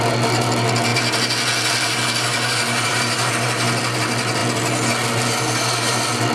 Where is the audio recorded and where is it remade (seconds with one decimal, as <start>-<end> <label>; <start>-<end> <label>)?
0.0-6.3 recorded